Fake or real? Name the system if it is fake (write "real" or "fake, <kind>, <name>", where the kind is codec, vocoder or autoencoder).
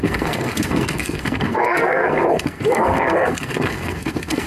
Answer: fake, codec, SNAC